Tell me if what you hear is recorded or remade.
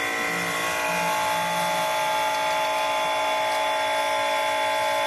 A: recorded